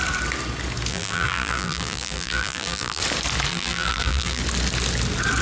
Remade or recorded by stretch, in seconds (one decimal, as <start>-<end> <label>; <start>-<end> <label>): 0.0-0.9 recorded; 0.9-3.0 remade; 3.0-3.5 recorded; 3.5-4.4 remade; 4.4-5.4 recorded